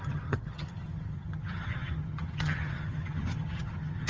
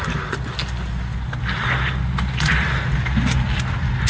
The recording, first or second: second